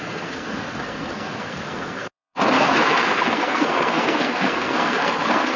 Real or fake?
fake